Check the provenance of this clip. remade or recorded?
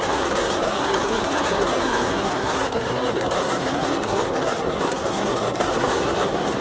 remade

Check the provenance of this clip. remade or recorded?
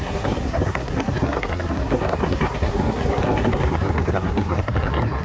remade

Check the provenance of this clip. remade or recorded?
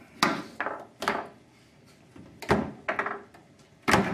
recorded